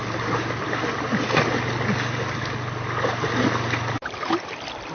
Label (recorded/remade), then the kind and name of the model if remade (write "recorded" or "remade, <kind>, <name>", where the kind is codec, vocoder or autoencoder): recorded